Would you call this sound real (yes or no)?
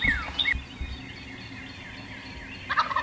yes